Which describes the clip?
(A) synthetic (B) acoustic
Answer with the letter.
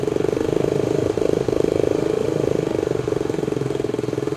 A